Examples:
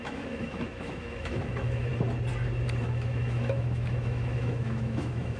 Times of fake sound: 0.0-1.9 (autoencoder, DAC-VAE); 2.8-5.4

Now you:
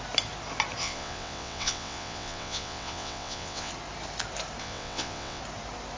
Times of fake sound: 0.8-3.7 (vocoder, WaveNeXt); 4.6-5.4

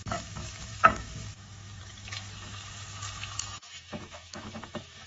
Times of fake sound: 0.0-5.1 (autoencoder, DAC-VAE)